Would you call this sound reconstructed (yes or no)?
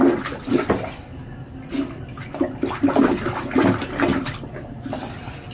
no